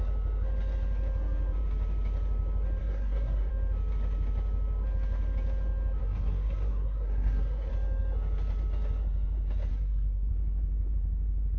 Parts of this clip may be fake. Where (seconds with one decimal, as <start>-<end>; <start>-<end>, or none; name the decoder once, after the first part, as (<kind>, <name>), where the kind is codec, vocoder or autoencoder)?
2.8-3.5 (codec, SNAC); 6.0-7.7; 9.7-10.3